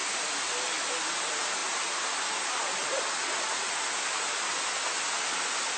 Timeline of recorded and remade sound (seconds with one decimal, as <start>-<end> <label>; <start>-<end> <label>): 0.0-5.8 recorded